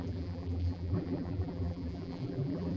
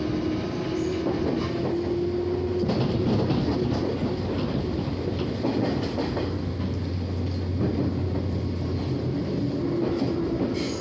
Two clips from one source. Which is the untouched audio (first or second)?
second